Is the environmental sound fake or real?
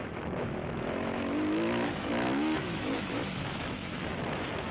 fake